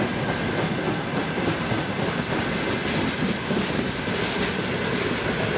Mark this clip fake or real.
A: real